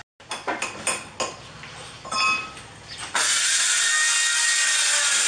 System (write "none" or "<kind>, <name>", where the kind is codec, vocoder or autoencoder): none